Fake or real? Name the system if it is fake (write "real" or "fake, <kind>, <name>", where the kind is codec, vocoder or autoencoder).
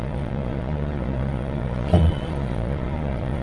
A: fake, vocoder, Vocos